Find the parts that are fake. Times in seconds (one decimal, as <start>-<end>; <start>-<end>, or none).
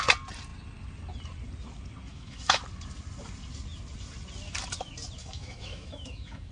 2.1-2.6; 5.2-6.5